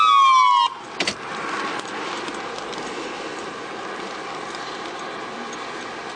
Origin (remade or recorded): recorded